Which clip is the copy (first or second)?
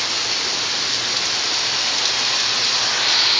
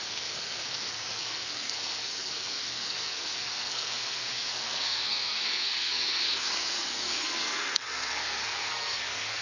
second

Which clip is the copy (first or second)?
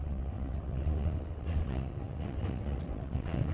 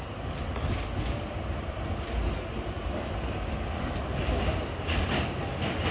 first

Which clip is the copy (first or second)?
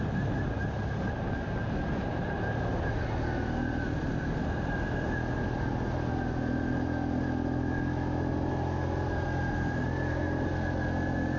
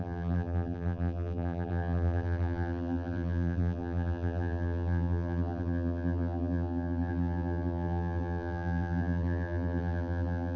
second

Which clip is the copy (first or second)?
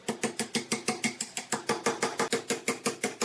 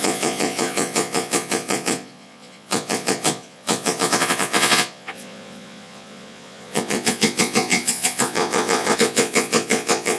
second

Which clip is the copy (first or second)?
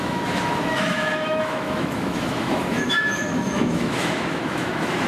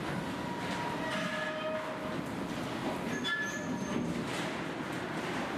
first